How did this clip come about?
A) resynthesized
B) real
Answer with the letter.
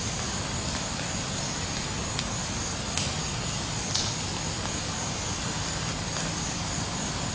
B